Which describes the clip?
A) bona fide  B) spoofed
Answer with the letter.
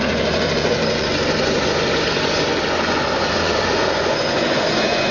B